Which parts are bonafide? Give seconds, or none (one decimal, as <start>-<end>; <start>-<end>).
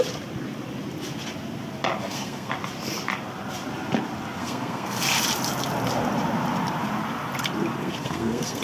0.0-2.0; 2.5-4.4; 5.0-7.8